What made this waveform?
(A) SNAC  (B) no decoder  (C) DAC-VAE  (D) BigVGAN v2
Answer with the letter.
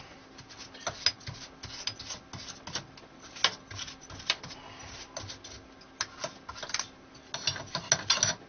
B